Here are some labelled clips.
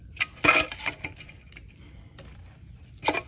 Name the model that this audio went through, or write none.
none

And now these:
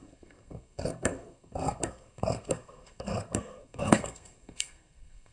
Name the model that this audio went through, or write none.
codec, SNAC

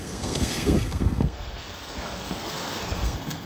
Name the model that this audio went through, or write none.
codec, SNAC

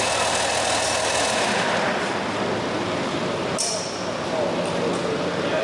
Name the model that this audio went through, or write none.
none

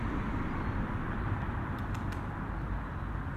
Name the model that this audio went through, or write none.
none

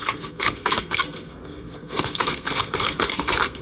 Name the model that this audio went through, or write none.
codec, SNAC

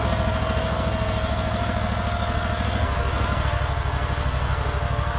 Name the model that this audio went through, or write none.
codec, SNAC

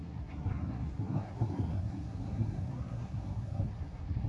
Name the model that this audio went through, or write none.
codec, SNAC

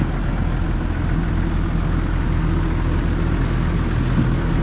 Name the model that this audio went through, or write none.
none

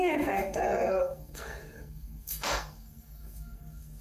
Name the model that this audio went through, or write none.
codec, SNAC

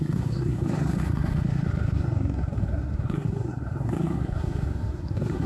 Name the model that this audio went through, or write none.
codec, SNAC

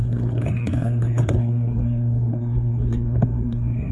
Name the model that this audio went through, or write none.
codec, SNAC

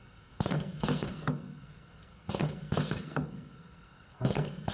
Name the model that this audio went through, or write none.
codec, SNAC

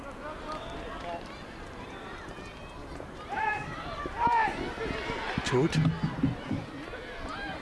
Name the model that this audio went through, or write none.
none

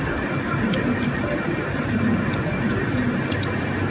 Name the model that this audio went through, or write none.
none